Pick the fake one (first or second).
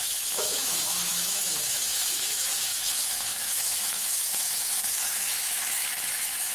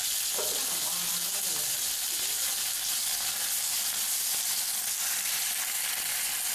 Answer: first